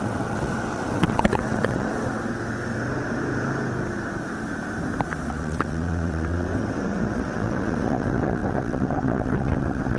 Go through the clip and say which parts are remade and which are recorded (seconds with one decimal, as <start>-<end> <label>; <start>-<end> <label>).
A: 0.0-1.9 remade; 1.9-5.3 recorded; 5.3-10.0 remade